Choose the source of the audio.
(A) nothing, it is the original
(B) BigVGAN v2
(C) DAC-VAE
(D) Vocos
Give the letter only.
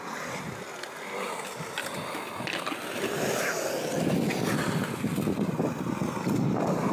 A